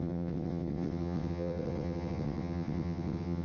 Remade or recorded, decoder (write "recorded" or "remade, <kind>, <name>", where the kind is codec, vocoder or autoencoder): remade, vocoder, WaveNeXt